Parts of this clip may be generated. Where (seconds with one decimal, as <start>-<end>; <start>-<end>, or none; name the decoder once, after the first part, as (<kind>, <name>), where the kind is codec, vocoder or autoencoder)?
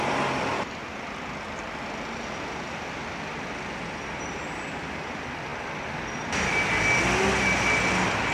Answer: none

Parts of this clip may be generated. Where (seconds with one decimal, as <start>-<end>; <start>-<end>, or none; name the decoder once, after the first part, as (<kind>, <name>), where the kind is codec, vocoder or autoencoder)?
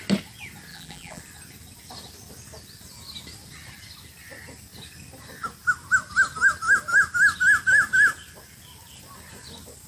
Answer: 0.7-1.2 (vocoder, BigVGAN v2)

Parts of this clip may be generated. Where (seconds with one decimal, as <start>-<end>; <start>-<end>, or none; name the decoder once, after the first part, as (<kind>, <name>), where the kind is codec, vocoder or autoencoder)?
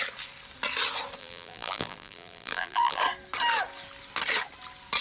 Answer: 1.2-3.0 (vocoder, BigVGAN v2)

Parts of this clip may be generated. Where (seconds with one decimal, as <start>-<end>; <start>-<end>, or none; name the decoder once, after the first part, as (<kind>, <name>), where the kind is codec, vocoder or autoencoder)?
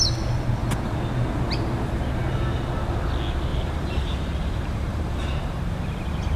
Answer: 3.5-5.6 (vocoder, BigVGAN v2)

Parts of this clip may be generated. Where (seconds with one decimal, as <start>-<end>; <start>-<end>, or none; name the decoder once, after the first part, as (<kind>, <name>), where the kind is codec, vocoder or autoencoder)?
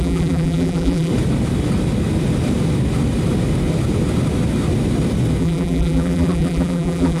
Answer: 0.0-1.1 (vocoder, BigVGAN v2); 5.4-7.2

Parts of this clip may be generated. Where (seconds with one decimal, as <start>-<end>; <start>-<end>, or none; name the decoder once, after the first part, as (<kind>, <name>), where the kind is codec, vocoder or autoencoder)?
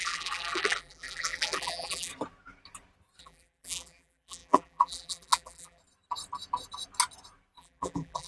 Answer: 0.0-2.1 (vocoder, BigVGAN v2); 3.2-5.8; 7.6-8.3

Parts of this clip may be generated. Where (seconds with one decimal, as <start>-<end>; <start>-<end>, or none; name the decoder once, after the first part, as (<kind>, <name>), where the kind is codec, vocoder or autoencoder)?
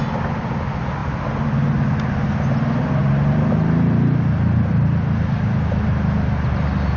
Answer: none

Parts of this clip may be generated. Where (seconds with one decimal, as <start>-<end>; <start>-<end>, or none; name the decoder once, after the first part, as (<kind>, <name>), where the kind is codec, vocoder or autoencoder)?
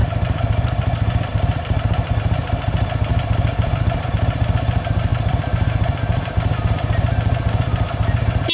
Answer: 0.0-2.1 (vocoder, BigVGAN v2); 3.1-4.1; 5.1-6.7